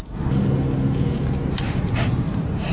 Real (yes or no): yes